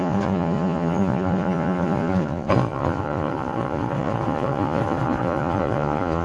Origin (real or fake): fake